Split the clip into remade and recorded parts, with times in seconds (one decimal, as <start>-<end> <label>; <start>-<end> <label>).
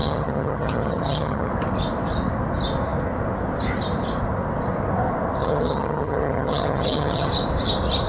0.0-1.5 remade; 1.5-5.4 recorded; 5.4-7.3 remade; 7.3-8.1 recorded